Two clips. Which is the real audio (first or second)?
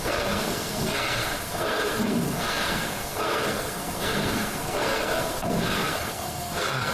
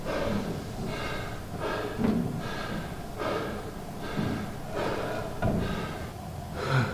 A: second